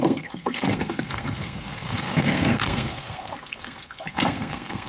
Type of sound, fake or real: fake